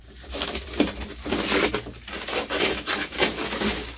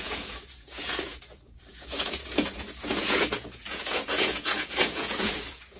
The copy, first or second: second